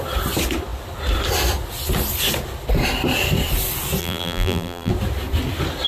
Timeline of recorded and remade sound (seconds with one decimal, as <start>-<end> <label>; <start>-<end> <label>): 0.0-4.0 recorded; 4.0-4.9 remade; 4.9-5.9 recorded